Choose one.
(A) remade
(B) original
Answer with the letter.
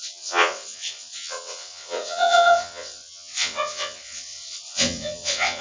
A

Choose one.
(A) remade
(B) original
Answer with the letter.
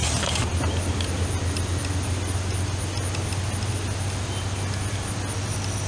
B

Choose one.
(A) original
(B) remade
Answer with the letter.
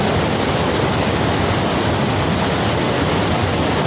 A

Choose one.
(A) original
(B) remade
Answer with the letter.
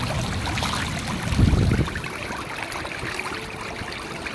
A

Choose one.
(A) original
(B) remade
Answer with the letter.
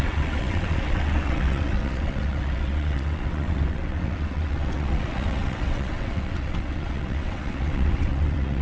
B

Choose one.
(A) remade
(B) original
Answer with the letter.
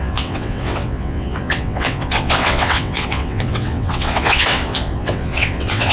A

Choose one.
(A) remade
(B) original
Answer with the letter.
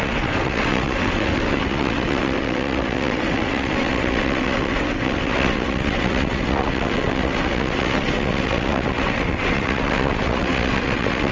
A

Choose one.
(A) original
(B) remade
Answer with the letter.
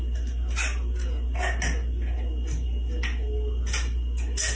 A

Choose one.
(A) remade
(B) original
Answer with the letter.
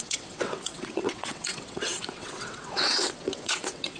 A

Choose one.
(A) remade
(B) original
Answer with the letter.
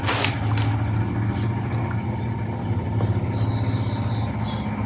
B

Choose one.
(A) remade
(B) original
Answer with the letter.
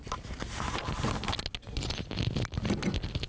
B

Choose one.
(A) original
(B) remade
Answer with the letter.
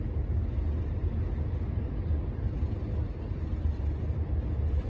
A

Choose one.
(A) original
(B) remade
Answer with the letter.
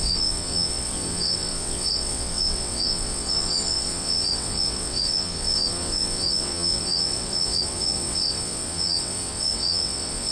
B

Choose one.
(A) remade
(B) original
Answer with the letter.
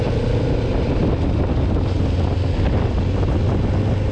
B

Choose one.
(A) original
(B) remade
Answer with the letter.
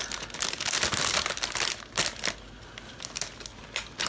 A